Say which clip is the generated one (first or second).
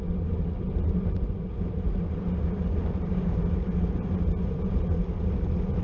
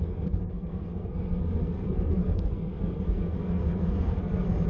second